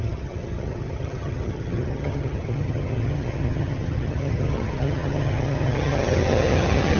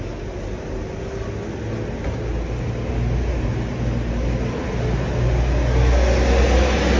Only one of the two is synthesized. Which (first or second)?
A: first